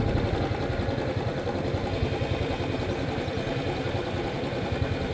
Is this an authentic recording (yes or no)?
yes